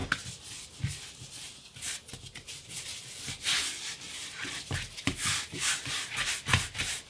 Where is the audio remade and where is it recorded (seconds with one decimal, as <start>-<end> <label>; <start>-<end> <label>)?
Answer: 0.0-7.1 recorded